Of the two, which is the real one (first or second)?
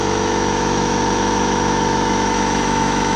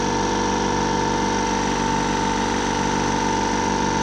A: second